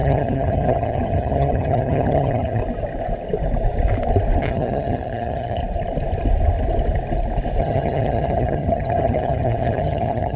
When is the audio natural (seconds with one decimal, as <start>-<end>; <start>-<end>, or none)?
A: 2.6-4.4; 5.6-7.6